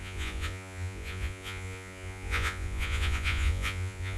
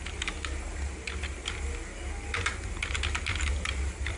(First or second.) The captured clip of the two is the second